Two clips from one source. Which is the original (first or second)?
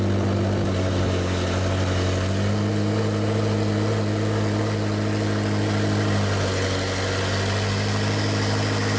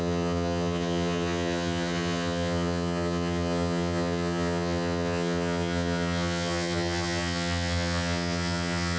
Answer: first